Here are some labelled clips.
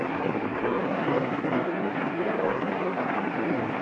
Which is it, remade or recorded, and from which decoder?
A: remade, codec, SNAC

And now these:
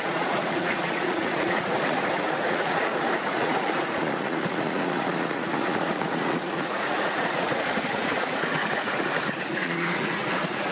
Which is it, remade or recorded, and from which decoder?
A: remade, vocoder, Vocos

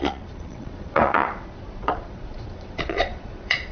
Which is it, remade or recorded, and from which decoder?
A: remade, vocoder, Vocos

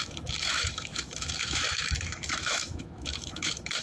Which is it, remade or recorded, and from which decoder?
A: remade, autoencoder, DAC-VAE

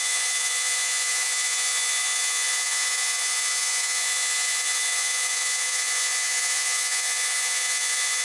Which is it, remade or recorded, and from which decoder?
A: remade, vocoder, Vocos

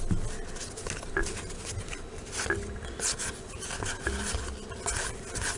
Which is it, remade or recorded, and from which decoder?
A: recorded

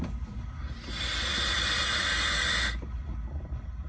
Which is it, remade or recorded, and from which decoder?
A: recorded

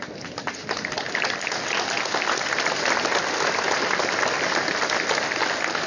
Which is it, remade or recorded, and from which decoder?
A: recorded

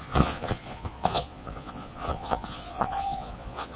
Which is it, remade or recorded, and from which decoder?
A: remade, vocoder, Vocos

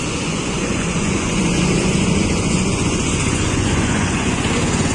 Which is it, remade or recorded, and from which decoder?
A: remade, vocoder, Vocos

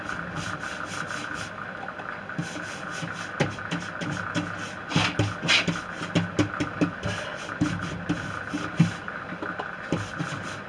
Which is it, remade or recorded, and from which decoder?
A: recorded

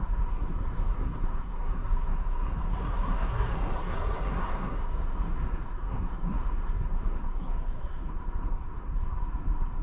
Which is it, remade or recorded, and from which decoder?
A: remade, codec, SNAC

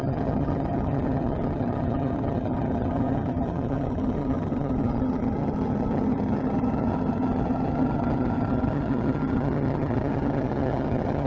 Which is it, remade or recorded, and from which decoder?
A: remade, vocoder, HiFi-GAN